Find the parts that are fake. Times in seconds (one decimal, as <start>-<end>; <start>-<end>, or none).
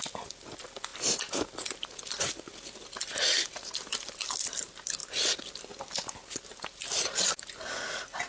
none